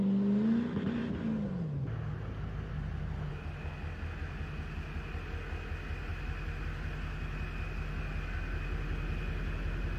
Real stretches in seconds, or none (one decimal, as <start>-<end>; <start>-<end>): 0.0-10.0